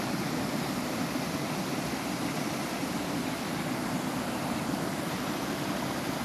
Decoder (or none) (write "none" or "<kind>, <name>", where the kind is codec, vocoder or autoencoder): none